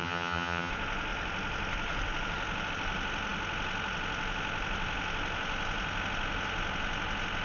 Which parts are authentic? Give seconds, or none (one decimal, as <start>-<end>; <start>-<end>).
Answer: 0.7-7.4